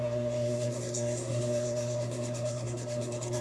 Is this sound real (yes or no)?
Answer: no